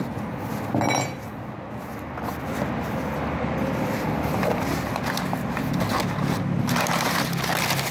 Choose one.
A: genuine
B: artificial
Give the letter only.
A